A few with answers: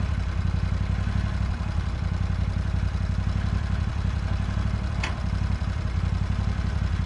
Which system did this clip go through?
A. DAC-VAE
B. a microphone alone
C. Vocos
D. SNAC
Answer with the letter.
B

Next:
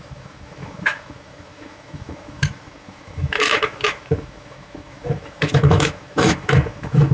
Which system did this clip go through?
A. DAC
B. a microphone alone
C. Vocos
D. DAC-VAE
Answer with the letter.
D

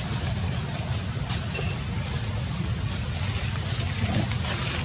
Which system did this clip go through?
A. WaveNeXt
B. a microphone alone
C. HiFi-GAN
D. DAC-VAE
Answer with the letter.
B